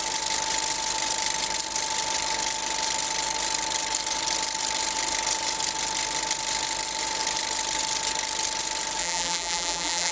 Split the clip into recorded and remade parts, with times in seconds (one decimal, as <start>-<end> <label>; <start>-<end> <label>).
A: 0.0-9.0 recorded; 9.0-10.1 remade